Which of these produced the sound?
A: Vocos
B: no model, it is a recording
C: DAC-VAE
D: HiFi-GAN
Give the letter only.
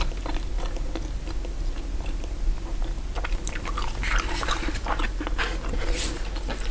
B